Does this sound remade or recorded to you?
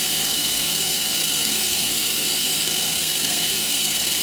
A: remade